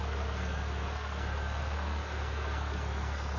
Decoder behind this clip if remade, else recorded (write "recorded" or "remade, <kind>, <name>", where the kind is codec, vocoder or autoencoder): remade, codec, SNAC